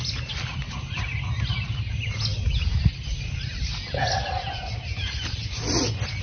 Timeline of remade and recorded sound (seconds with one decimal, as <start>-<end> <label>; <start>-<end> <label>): 0.0-6.2 recorded